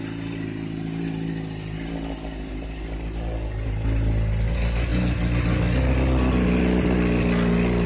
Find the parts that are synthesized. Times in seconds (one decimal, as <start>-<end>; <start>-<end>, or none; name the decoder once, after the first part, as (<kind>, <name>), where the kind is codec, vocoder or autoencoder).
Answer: none